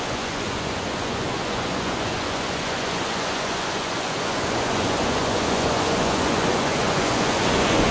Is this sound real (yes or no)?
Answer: no